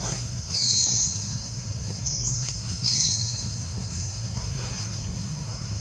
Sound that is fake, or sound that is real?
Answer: fake